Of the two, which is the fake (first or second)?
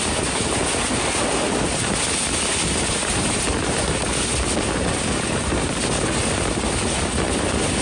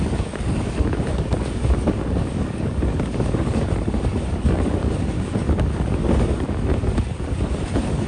second